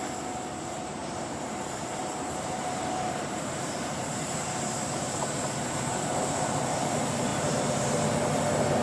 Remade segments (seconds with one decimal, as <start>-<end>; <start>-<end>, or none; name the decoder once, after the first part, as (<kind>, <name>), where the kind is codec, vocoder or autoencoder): 1.0-5.4 (vocoder, BigVGAN v2); 7.3-8.0

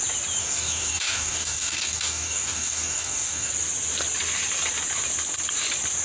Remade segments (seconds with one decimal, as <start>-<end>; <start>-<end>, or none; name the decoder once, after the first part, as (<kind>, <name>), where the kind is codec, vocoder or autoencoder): 0.4-3.5 (codec, DAC)

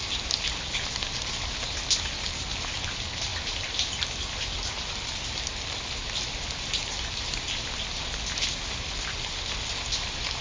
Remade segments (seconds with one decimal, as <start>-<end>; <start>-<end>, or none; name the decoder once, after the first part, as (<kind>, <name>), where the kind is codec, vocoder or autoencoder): none

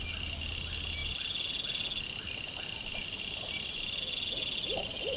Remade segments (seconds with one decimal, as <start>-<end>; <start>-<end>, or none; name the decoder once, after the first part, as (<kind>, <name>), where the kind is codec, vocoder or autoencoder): 2.9-3.8 (vocoder, BigVGAN v2)

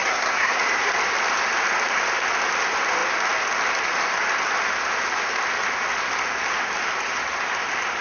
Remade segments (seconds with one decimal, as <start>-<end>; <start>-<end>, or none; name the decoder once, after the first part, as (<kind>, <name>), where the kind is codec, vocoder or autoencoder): 0.0-0.6 (codec, SNAC)

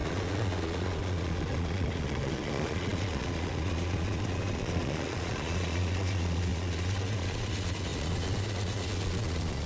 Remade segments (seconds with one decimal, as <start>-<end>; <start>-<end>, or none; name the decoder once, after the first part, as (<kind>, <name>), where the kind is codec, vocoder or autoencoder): 0.0-9.7 (vocoder, Vocos)